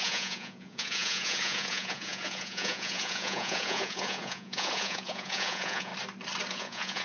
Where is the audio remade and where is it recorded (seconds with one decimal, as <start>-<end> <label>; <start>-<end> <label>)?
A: 0.0-5.9 remade; 5.9-6.5 recorded; 6.5-7.0 remade